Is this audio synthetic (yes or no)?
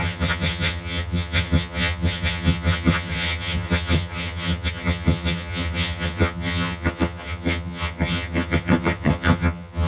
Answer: yes